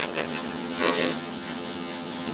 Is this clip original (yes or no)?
no